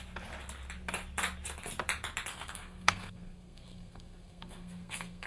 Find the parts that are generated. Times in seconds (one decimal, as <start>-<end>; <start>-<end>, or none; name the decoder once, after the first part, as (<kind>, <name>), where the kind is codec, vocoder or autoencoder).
2.3-5.3 (codec, SNAC)